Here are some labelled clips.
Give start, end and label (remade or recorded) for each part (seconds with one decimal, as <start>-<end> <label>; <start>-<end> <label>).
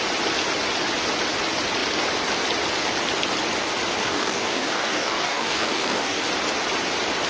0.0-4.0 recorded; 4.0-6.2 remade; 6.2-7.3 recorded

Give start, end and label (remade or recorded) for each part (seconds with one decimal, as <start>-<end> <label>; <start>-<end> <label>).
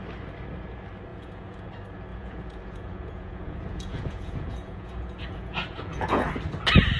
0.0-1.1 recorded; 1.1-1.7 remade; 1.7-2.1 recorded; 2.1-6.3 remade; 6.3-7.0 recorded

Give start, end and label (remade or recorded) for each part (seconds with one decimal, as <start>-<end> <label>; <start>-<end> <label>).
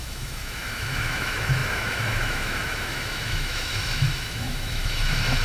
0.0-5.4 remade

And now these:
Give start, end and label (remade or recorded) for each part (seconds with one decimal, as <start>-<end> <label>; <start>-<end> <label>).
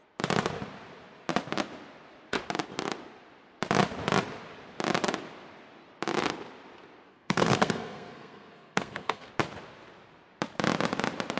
0.0-7.1 recorded; 7.1-9.3 remade; 9.3-11.4 recorded